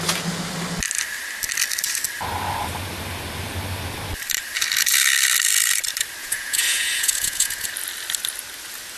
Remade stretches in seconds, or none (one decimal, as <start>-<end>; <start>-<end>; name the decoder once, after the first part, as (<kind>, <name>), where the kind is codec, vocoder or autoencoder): 6.2-7.7 (vocoder, Vocos)